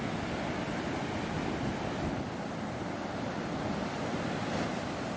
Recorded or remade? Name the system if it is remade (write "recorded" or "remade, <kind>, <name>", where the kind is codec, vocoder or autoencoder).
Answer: recorded